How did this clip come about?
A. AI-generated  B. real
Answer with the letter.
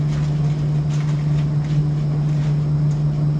B